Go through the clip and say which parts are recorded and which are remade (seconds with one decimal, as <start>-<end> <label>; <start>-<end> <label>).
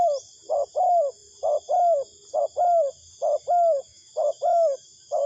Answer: 0.0-3.9 recorded; 3.9-5.3 remade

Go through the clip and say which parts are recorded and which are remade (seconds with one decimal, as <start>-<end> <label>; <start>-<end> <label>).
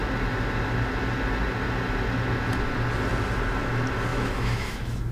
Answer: 0.0-4.1 recorded; 4.1-5.1 remade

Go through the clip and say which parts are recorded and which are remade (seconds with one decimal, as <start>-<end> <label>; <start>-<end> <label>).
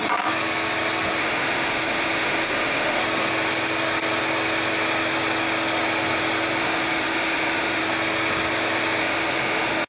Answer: 0.0-1.2 recorded; 1.2-3.0 remade; 3.0-6.6 recorded; 6.6-7.8 remade; 7.8-9.0 recorded; 9.0-9.9 remade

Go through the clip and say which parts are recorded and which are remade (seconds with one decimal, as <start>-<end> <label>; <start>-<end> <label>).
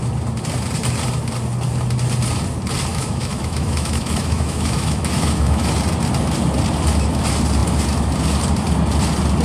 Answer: 0.0-2.9 recorded; 2.9-5.7 remade; 5.7-9.4 recorded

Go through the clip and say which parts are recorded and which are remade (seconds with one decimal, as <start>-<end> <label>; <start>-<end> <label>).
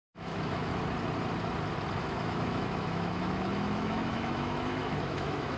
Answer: 0.0-0.7 remade; 0.7-2.0 recorded; 2.0-5.6 remade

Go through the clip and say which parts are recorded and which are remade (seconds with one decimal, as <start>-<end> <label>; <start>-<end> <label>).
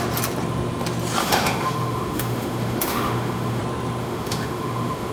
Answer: 0.0-1.2 recorded; 1.2-3.6 remade; 3.6-4.0 recorded; 4.0-5.1 remade